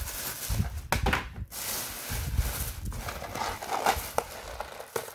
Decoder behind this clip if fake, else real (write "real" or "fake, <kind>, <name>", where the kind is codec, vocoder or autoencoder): real